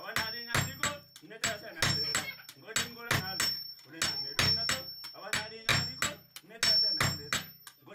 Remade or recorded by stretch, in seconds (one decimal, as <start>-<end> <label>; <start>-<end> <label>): 0.0-7.9 recorded